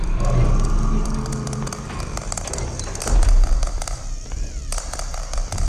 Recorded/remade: remade